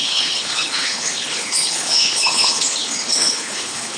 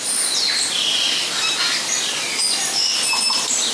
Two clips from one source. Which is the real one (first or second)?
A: second